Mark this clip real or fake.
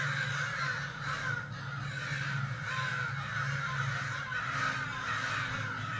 real